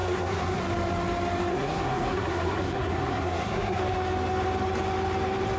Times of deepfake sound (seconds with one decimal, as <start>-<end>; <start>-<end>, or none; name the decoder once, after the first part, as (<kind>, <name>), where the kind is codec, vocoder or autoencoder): 0.0-0.6 (codec, SNAC); 1.5-3.8